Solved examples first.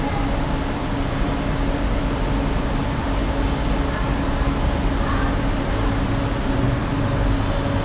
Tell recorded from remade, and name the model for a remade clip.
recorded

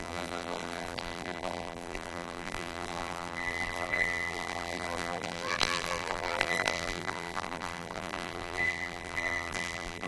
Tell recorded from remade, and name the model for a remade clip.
remade, vocoder, BigVGAN v2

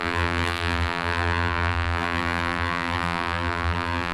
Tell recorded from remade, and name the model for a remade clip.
remade, vocoder, BigVGAN v2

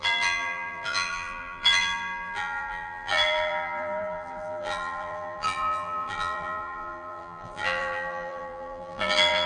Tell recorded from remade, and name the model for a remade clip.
remade, vocoder, BigVGAN v2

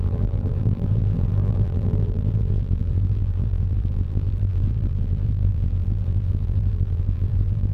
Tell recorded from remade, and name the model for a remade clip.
remade, vocoder, BigVGAN v2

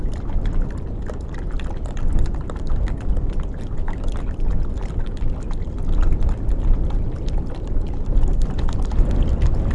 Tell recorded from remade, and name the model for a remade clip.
recorded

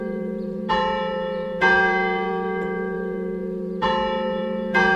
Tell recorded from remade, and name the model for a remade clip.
remade, vocoder, BigVGAN v2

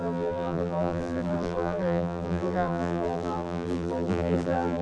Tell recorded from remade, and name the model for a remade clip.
remade, vocoder, BigVGAN v2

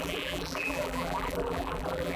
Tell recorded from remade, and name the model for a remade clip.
remade, vocoder, BigVGAN v2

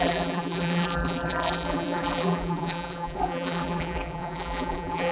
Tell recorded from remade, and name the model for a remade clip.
remade, vocoder, BigVGAN v2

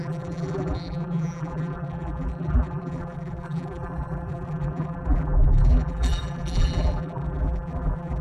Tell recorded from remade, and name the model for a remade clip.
remade, vocoder, BigVGAN v2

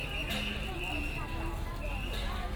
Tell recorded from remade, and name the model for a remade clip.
recorded